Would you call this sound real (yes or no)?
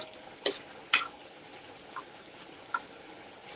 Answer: yes